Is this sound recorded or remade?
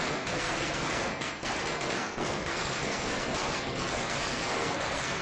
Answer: remade